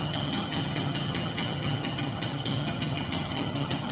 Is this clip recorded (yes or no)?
no